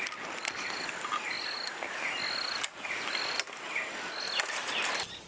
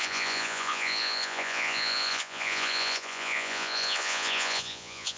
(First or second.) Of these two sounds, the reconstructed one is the second